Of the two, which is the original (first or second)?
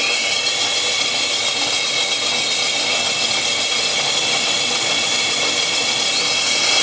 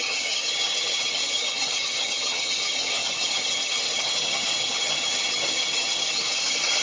first